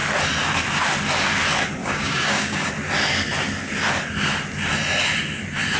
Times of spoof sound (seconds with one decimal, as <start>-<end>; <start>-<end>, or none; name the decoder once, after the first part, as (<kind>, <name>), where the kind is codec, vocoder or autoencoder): 1.8-2.7 (codec, DAC)